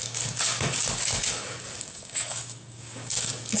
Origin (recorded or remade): remade